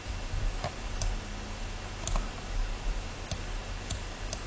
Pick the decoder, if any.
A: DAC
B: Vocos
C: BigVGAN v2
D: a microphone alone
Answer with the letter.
D